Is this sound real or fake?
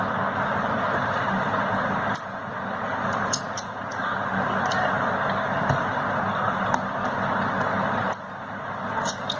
real